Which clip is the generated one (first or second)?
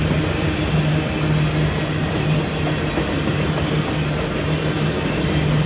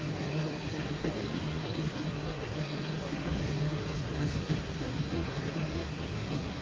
second